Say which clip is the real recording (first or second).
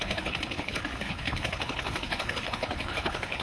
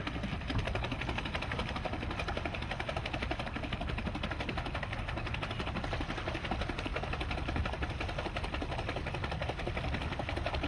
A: second